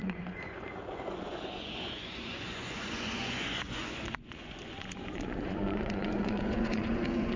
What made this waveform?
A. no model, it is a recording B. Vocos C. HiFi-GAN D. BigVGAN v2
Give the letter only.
B